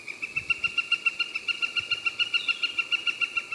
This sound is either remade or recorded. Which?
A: recorded